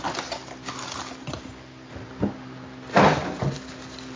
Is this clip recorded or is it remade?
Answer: recorded